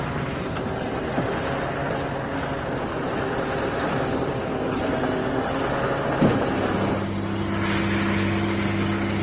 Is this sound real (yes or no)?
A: yes